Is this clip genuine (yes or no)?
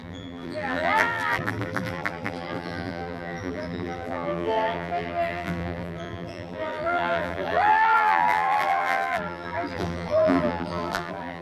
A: no